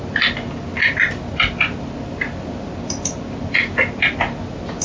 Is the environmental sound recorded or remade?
recorded